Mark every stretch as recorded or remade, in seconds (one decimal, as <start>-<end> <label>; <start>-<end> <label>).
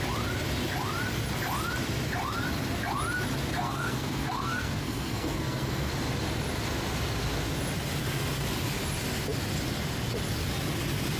0.0-3.6 recorded; 3.6-5.9 remade; 5.9-11.2 recorded